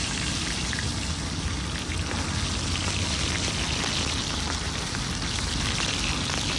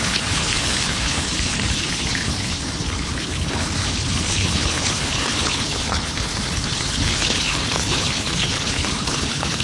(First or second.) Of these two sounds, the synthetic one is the second